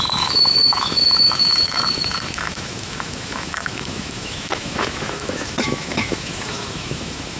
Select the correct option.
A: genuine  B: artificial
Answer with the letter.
B